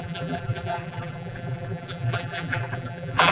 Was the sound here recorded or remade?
remade